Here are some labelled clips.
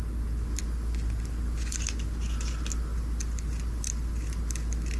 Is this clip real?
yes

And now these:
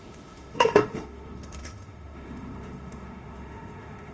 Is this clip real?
no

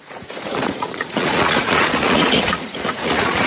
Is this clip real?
no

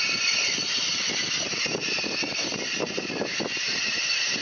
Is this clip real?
yes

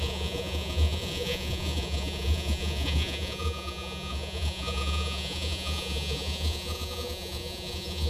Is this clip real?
no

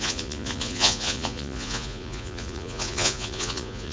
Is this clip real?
no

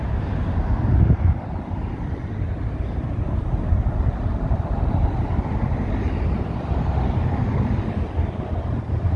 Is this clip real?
no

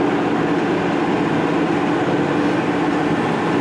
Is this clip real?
yes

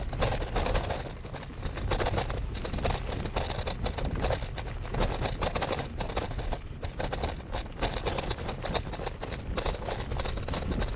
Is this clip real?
yes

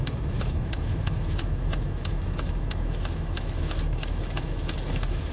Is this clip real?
no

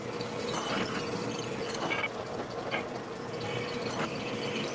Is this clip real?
yes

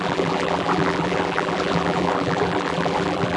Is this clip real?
no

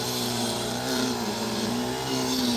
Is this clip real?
no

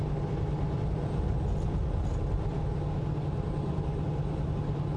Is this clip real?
yes